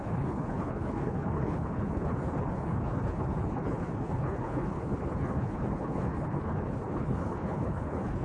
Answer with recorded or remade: remade